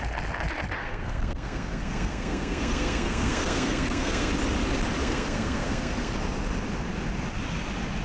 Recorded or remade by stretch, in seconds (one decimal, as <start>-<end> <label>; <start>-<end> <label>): 0.0-0.8 recorded; 0.8-4.3 remade; 4.3-5.0 recorded; 5.0-6.1 remade; 6.1-8.0 recorded